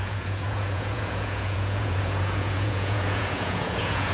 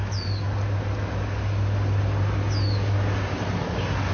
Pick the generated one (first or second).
first